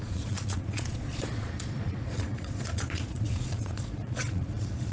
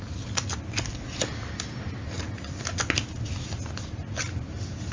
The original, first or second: second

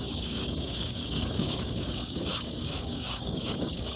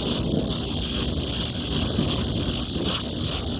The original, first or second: second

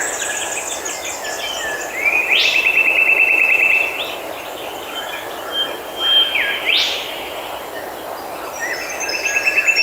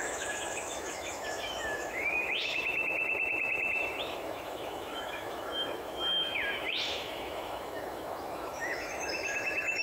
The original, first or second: first